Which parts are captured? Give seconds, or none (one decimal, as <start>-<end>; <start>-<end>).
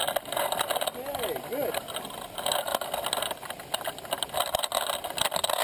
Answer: 0.0-5.6